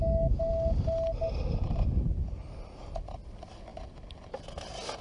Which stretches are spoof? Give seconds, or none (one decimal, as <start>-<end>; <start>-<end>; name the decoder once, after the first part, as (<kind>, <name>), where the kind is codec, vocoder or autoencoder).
none